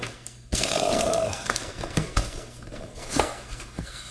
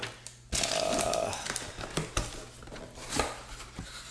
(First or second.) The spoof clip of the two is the first